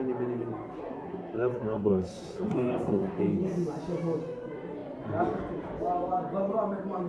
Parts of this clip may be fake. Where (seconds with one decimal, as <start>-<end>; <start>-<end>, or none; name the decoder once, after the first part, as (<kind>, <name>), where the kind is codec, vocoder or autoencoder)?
0.8-3.2 (codec, SNAC)

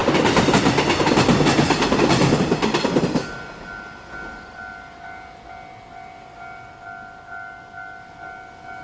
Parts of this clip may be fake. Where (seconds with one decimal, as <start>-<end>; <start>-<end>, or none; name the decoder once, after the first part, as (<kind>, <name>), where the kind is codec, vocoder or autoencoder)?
none

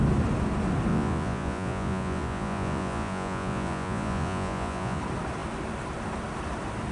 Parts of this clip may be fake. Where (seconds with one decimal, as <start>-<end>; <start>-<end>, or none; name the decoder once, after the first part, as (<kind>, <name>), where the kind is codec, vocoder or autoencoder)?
0.9-5.0 (vocoder, Vocos)

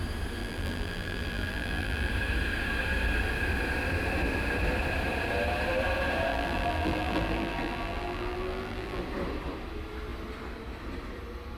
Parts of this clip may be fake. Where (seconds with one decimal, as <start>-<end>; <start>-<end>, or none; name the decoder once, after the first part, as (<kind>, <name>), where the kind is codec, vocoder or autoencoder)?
0.4-2.1 (vocoder, BigVGAN v2); 6.3-9.0

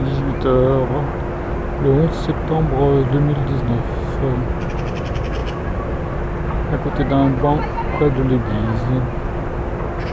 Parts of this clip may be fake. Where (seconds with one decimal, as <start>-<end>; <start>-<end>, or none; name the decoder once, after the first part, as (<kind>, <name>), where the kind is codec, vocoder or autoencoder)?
none

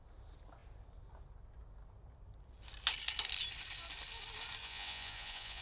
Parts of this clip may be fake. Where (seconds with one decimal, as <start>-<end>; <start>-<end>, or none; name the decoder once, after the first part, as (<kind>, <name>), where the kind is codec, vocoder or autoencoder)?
4.6-5.6 (vocoder, Vocos)

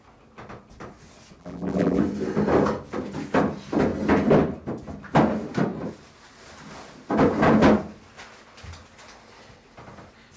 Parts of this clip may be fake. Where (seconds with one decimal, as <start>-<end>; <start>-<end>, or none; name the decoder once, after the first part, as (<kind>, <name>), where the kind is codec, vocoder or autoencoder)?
1.4-2.0 (vocoder, BigVGAN v2)